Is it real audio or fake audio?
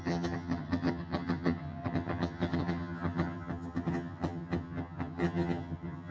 fake